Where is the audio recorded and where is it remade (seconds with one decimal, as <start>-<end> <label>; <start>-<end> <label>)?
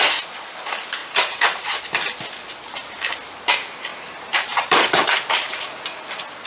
0.0-1.0 recorded; 1.0-1.8 remade; 1.8-3.9 recorded; 3.9-6.0 remade; 6.0-6.5 recorded